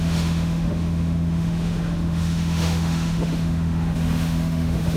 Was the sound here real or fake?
fake